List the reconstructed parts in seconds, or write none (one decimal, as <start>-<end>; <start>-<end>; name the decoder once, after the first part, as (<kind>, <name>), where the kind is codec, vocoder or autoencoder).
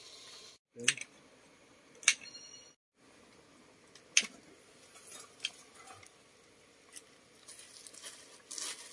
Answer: none